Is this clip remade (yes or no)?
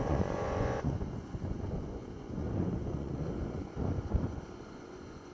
yes